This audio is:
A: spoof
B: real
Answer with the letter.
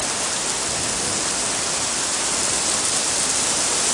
B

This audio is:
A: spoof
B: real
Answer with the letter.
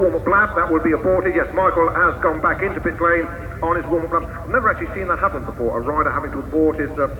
B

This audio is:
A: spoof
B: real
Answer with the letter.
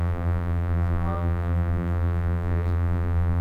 A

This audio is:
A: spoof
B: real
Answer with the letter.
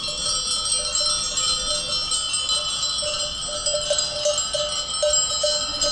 B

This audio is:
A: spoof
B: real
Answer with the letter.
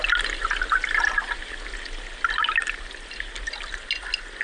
B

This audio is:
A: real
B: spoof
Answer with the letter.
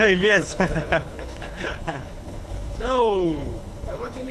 B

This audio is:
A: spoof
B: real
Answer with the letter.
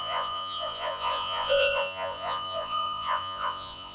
A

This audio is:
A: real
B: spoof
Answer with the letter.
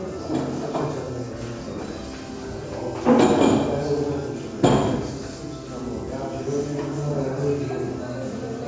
A